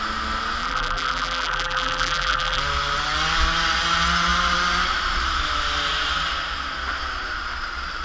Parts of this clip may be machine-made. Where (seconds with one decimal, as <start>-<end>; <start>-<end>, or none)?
0.6-2.6